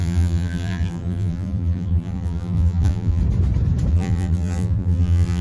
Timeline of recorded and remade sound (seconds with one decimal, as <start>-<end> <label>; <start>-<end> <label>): 0.0-3.2 remade; 3.2-3.9 recorded; 3.9-5.4 remade